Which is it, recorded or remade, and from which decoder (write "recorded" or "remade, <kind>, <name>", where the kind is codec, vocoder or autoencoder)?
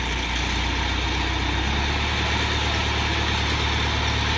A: recorded